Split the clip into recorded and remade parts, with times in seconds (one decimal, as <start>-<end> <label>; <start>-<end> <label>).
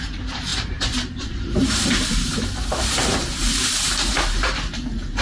0.0-5.2 remade